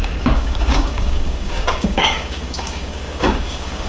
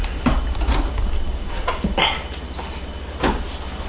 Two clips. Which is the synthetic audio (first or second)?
first